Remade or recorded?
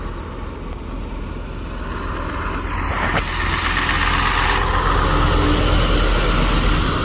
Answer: recorded